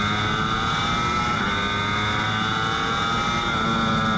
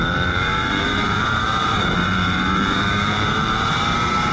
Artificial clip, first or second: second